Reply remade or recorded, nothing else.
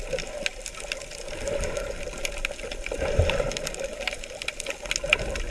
recorded